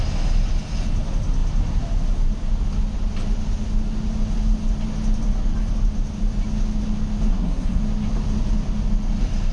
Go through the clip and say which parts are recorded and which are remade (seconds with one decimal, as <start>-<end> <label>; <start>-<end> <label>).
0.0-7.3 recorded; 7.3-7.8 remade; 7.8-9.5 recorded